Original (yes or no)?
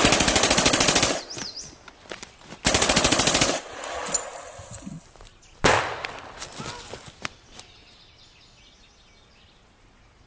yes